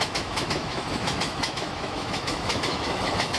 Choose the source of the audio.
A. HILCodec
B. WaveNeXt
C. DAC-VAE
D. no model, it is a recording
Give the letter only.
C